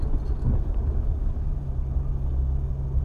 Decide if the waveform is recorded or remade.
recorded